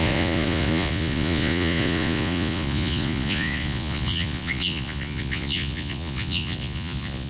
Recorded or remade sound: remade